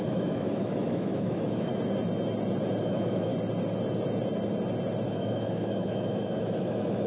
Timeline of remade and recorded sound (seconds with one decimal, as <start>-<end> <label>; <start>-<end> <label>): 0.0-1.7 remade; 1.7-2.8 recorded; 2.8-3.3 remade; 3.3-5.1 recorded; 5.1-7.1 remade